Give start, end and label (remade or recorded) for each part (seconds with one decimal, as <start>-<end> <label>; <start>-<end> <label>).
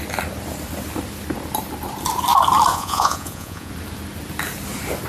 0.0-2.7 recorded; 2.7-3.7 remade; 3.7-5.1 recorded